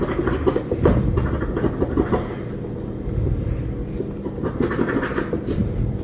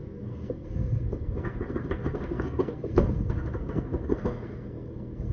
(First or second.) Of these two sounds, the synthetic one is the second